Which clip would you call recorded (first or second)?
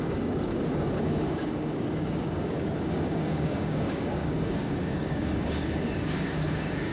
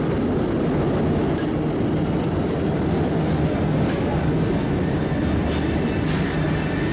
second